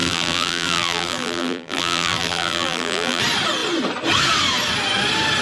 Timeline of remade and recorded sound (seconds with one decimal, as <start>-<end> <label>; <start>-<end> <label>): 0.0-3.2 remade; 3.2-5.4 recorded